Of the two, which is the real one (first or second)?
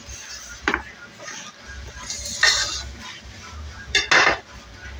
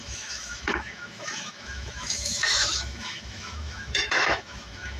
first